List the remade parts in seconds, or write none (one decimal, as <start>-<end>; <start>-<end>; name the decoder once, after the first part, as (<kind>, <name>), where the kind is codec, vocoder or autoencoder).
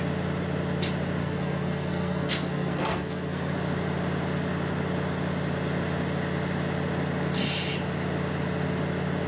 1.2-3.5 (codec, SNAC)